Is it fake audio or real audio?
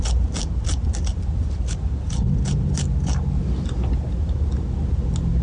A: real